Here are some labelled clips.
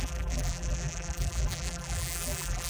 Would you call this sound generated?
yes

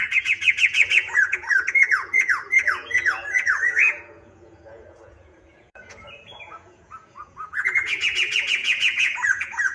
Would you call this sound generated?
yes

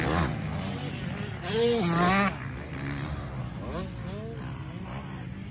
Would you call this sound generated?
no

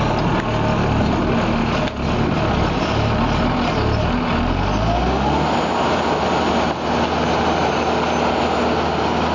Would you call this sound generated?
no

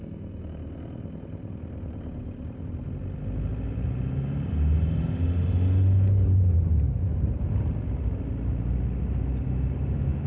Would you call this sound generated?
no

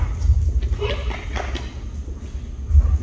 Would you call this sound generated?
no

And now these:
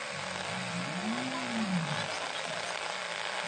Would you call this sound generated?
no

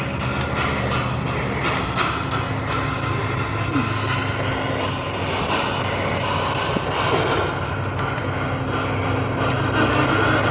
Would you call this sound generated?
yes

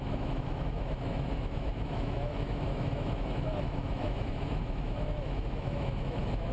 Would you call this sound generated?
yes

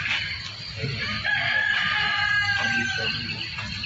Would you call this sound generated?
no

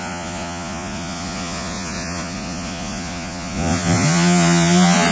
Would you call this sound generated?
yes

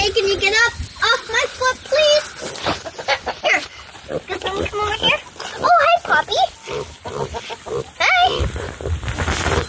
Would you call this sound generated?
no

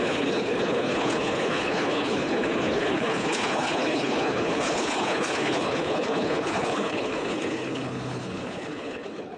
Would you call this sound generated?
yes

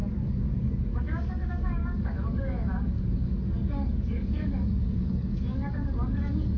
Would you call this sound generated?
yes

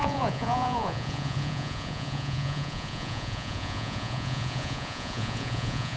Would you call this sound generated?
yes